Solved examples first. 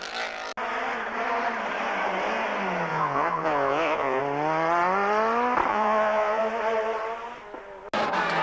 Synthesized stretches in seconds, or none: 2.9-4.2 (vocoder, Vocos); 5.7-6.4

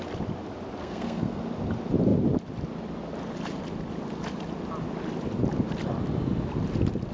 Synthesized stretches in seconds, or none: 0.8-1.4 (codec, SNAC)